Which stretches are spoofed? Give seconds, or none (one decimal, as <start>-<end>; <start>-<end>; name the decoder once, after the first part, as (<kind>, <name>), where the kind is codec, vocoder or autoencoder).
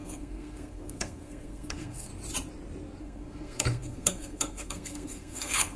0.0-2.1 (codec, SNAC); 3.0-5.8